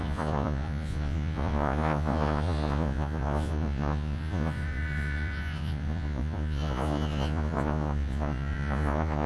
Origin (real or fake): fake